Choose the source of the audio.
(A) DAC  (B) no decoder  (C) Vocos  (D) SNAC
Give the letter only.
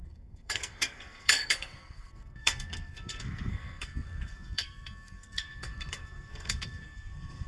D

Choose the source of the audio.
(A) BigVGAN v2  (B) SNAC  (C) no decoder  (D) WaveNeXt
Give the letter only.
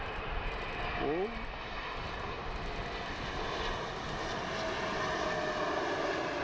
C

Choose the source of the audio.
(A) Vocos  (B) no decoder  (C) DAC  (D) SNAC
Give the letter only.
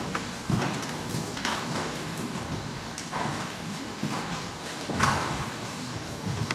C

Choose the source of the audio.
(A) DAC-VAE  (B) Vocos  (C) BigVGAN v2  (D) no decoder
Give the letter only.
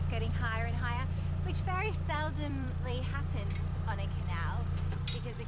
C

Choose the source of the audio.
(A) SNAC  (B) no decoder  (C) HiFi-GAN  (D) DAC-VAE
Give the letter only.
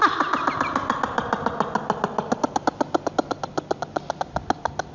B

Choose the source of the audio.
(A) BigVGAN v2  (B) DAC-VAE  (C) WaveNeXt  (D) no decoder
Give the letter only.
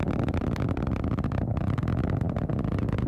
D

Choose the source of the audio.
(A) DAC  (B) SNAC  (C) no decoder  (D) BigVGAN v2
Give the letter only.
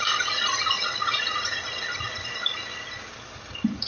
C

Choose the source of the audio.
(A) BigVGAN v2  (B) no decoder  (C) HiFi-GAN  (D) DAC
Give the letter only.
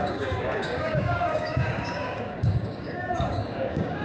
D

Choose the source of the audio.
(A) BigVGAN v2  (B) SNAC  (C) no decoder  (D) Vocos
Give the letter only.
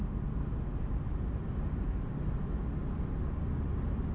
C